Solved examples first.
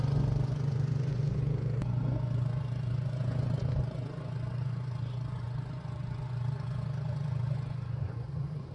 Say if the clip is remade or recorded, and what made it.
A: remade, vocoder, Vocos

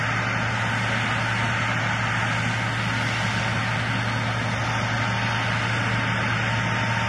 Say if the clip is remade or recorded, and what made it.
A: recorded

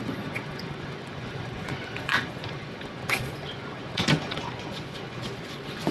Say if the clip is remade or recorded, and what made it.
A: remade, vocoder, Vocos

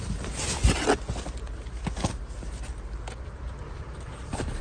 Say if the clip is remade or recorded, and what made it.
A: recorded